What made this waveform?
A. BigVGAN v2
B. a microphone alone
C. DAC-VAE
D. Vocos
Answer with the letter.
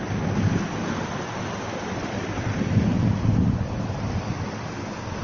B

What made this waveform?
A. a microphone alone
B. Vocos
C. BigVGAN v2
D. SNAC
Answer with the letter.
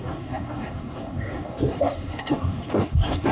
D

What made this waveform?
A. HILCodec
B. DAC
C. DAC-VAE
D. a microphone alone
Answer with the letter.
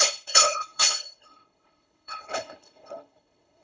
A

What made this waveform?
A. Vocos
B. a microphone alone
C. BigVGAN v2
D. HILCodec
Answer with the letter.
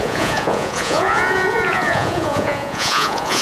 A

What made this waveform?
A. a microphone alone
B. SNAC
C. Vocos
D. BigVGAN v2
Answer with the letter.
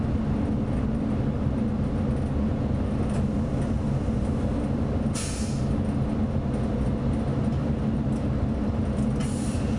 A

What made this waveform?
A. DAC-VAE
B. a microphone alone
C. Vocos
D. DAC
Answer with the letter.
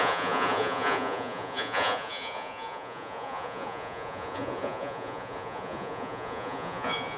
C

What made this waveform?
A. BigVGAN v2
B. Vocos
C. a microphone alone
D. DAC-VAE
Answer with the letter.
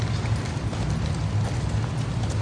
C